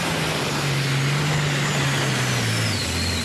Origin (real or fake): real